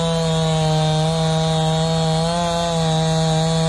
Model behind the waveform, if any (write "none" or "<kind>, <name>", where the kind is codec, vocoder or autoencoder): none